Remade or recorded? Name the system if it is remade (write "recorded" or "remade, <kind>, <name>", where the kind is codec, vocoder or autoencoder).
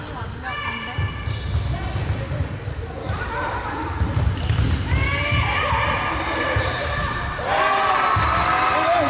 recorded